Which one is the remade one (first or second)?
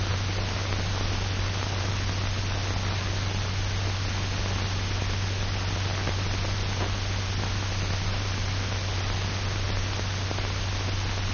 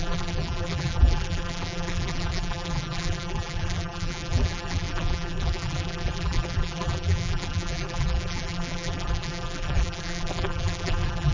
second